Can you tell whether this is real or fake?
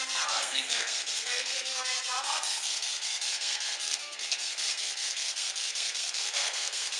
fake